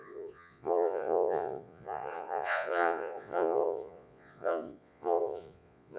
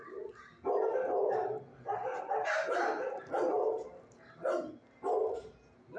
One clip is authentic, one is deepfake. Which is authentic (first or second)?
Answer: second